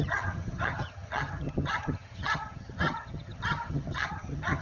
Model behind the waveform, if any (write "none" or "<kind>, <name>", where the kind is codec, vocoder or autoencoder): vocoder, HiFi-GAN